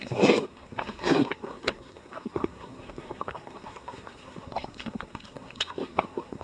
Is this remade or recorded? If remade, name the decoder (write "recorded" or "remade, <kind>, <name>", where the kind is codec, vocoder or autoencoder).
remade, codec, SNAC